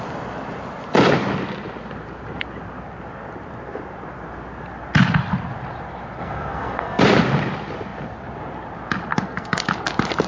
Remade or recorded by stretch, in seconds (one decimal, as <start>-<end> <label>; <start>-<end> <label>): 0.0-6.2 recorded; 6.2-7.0 remade; 7.0-9.1 recorded; 9.1-9.7 remade; 9.7-10.3 recorded